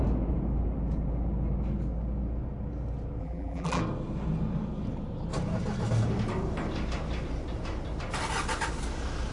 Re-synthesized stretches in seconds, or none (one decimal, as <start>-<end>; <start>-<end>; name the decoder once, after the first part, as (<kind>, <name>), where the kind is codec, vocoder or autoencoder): 3.2-3.8 (vocoder, BigVGAN v2)